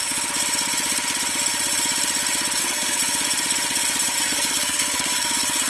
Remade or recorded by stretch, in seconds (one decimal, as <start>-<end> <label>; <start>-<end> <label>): 0.0-2.6 recorded; 2.6-3.0 remade; 3.0-4.2 recorded; 4.2-5.7 remade